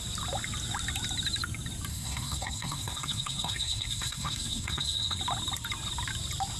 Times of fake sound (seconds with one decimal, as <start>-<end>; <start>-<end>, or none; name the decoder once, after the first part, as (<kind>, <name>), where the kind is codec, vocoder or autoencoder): 1.9-5.2 (codec, SNAC)